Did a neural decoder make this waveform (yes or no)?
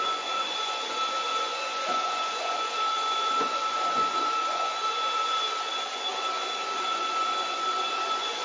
yes